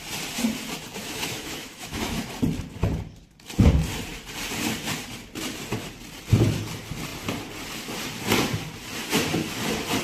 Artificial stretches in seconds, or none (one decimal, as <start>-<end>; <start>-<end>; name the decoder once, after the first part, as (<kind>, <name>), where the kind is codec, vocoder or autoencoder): 1.0-2.3 (autoencoder, DAC-VAE)